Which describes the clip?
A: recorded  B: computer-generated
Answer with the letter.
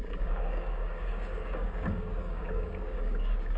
B